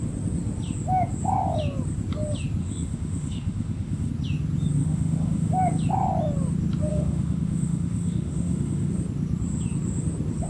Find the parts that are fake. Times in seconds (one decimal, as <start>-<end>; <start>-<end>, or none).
2.6-4.1; 4.8-5.5; 6.9-8.9